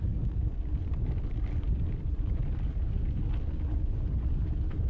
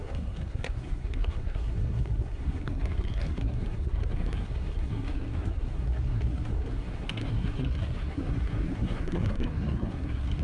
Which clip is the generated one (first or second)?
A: second